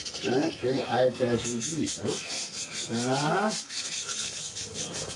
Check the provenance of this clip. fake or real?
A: fake